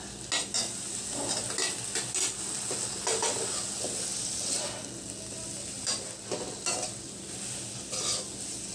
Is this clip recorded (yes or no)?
yes